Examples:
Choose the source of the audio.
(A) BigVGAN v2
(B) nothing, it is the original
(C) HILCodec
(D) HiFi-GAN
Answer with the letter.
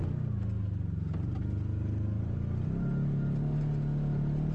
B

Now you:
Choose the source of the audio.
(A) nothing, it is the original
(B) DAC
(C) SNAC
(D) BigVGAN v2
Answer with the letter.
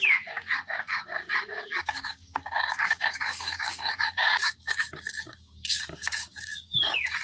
B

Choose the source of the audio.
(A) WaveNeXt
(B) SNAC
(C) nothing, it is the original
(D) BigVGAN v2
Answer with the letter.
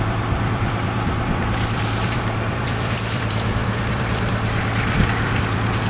D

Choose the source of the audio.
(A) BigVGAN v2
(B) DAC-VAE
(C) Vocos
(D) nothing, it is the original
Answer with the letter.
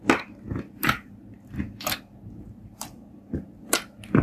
D